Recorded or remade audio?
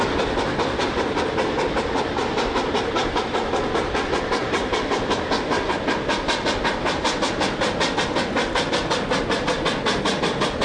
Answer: recorded